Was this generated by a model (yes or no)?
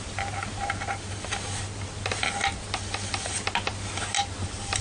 no